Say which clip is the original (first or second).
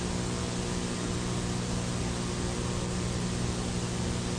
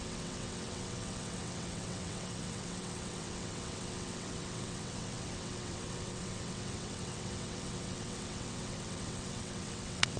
first